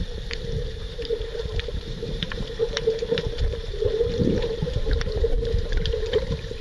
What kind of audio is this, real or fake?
fake